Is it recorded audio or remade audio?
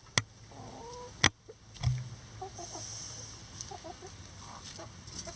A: recorded